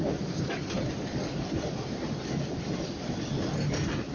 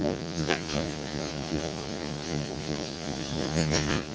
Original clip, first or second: first